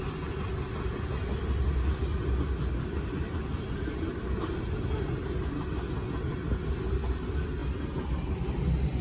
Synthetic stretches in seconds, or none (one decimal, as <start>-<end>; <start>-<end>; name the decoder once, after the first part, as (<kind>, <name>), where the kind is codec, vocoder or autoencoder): none